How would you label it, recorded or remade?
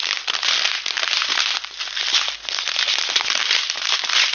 recorded